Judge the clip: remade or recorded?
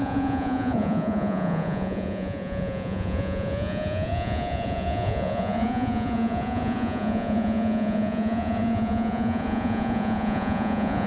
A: remade